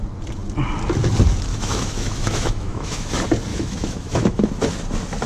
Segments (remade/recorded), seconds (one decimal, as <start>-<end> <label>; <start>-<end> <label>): 0.0-1.5 recorded; 1.5-3.1 remade; 3.1-3.5 recorded; 3.5-4.5 remade; 4.5-5.3 recorded